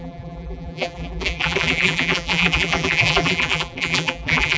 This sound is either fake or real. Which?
fake